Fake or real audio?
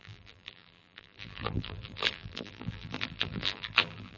fake